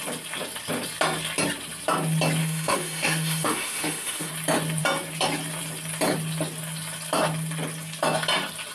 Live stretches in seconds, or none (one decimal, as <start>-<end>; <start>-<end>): 0.0-2.4; 4.3-8.7